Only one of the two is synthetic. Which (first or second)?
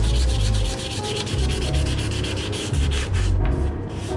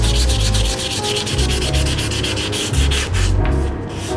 first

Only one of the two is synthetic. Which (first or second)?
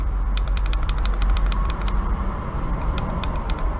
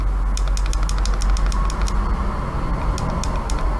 first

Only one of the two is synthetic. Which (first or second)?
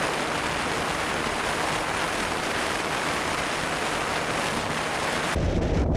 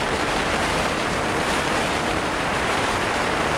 second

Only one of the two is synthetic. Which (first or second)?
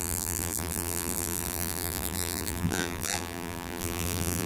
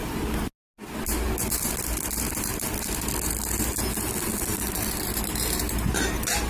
first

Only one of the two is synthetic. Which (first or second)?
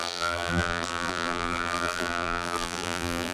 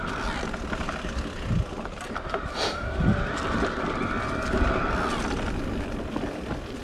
first